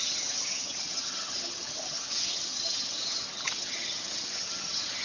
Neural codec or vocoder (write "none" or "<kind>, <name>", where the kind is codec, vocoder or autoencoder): vocoder, HiFi-GAN